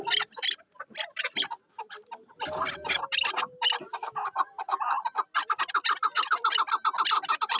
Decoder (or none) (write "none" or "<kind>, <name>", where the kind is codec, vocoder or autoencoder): none